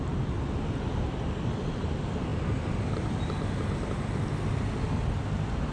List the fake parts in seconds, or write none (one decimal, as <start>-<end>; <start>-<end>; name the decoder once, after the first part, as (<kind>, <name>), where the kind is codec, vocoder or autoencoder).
none